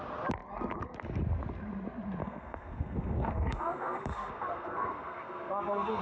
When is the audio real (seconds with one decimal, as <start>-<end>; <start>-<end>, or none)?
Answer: 0.0-2.2